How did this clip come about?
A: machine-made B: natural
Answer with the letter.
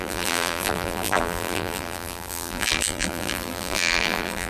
A